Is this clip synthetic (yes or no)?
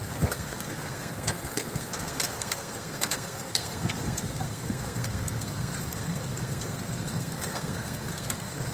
yes